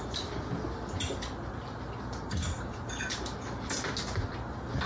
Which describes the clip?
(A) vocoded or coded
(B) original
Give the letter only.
B